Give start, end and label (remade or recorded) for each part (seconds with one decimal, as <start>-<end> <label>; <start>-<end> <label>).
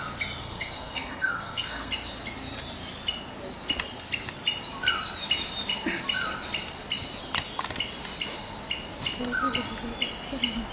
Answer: 0.0-0.4 recorded; 0.4-1.9 remade; 1.9-10.7 recorded